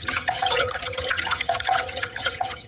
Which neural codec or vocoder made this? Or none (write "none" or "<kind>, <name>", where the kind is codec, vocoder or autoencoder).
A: vocoder, HiFi-GAN